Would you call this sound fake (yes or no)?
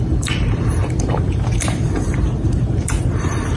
yes